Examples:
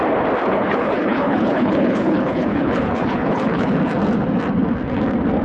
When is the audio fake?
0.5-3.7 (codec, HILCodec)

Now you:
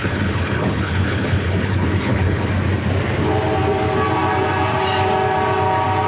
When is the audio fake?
0.0-2.5 (codec, HILCodec)

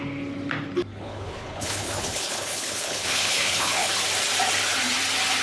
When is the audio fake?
0.9-3.9 (codec, HILCodec)

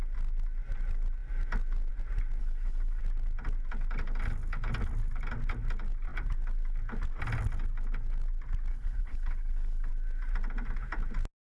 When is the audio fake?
2.4-3.0 (codec, HILCodec); 8.7-9.9

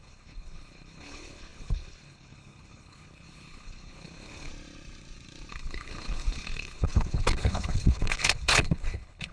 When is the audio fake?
0.0-4.5 (codec, HILCodec); 5.5-9.3

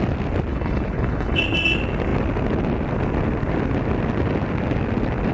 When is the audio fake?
0.5-1.4 (codec, HILCodec)

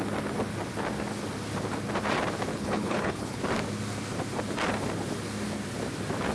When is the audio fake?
2.5-3.4 (codec, HILCodec)